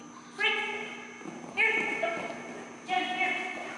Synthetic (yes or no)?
no